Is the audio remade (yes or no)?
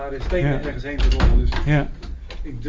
no